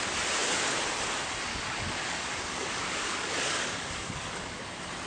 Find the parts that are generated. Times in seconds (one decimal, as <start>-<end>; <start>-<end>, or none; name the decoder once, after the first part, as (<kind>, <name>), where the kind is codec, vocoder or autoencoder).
1.5-4.6 (codec, DAC)